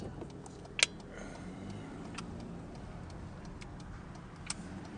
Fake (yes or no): no